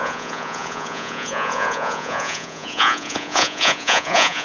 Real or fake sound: fake